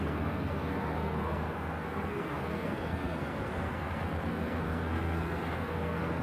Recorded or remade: remade